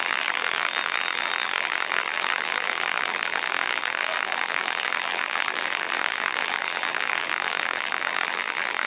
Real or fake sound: fake